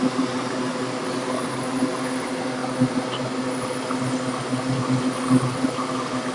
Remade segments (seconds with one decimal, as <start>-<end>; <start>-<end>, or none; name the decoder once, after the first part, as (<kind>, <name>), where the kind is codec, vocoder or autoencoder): none